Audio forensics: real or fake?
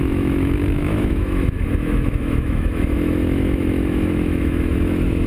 fake